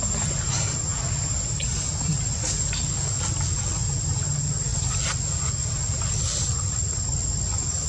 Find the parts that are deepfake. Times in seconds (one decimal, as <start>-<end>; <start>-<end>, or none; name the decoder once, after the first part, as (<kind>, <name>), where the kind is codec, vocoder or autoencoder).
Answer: none